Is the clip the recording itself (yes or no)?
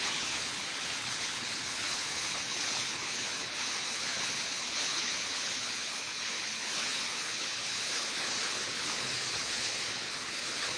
no